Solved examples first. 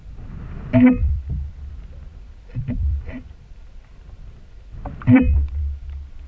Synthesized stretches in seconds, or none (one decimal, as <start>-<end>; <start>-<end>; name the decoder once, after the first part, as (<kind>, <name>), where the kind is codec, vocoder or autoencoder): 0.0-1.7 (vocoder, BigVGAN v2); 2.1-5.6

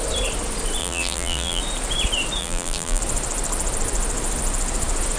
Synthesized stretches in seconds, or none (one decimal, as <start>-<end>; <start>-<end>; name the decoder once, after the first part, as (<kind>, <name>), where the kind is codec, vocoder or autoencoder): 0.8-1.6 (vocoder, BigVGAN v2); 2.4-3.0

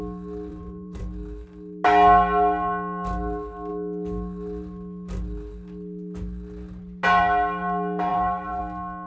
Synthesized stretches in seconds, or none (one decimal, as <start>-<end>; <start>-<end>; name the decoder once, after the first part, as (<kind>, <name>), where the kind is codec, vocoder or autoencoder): 0.5-1.0 (vocoder, BigVGAN v2); 8.1-8.6

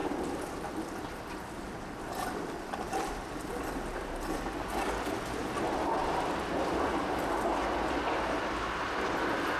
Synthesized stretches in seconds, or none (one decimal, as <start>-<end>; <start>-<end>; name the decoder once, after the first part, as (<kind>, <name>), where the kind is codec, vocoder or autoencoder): 0.0-4.5 (vocoder, BigVGAN v2)

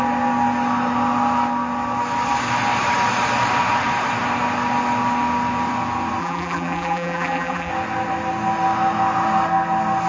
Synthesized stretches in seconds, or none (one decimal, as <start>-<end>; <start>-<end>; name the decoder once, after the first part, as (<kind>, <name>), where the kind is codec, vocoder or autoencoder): 6.2-7.7 (vocoder, BigVGAN v2)

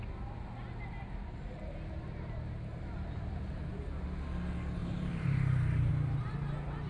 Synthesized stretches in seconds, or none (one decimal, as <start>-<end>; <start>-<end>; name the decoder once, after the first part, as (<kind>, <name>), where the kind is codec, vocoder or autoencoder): 2.7-3.7 (vocoder, BigVGAN v2); 4.8-5.9